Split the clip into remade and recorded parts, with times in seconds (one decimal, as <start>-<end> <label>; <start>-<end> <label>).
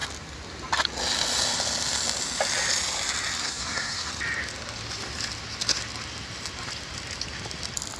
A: 0.0-3.4 recorded; 3.4-4.1 remade; 4.1-8.0 recorded